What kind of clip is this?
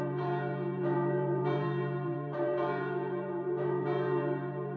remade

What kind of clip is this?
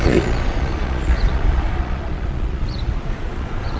remade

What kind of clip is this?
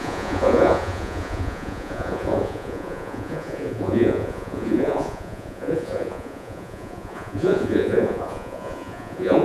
remade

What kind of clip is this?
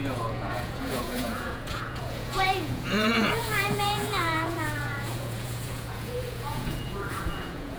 remade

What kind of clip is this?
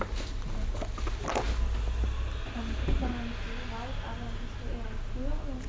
recorded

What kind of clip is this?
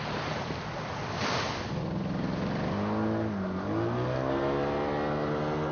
recorded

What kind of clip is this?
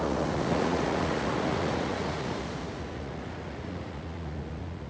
remade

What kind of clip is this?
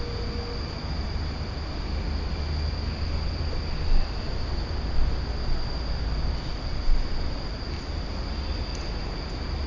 recorded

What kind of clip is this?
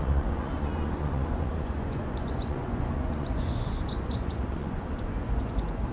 remade